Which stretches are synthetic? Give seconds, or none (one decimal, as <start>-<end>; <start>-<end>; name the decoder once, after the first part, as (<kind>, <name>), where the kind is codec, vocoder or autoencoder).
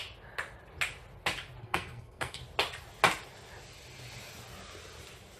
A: 1.6-2.4 (codec, SNAC)